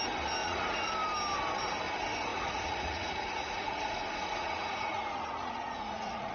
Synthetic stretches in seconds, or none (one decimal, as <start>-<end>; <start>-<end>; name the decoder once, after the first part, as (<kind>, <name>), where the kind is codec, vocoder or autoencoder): 0.4-0.9 (vocoder, Vocos); 2.3-6.3